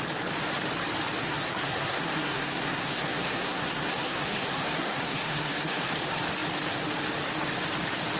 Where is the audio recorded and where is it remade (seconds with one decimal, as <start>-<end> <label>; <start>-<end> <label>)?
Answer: 0.0-1.2 recorded; 1.2-5.9 remade; 5.9-8.2 recorded